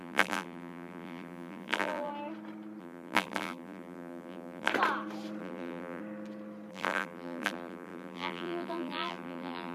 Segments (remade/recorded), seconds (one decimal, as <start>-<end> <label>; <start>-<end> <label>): 0.0-2.1 remade; 2.1-2.8 recorded; 2.8-4.7 remade; 4.7-5.4 recorded; 5.4-6.0 remade; 6.0-6.7 recorded; 6.7-9.7 remade